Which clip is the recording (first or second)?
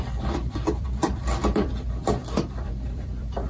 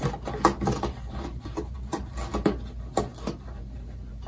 second